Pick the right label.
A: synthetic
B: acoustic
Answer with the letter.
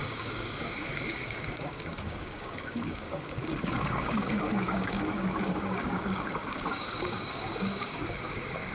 A